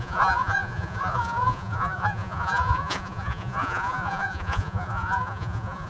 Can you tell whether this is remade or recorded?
remade